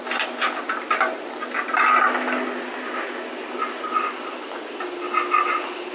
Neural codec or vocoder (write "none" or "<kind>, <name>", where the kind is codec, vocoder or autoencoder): none